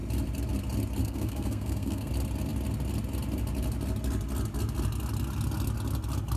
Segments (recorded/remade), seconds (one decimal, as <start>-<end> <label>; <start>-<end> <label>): 0.0-1.0 recorded; 1.0-2.1 remade; 2.1-6.4 recorded